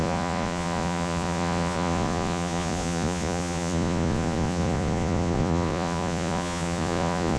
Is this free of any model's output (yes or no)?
no